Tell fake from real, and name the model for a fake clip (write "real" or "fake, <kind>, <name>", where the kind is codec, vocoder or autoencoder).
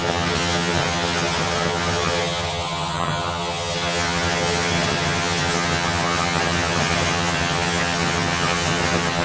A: fake, vocoder, HiFi-GAN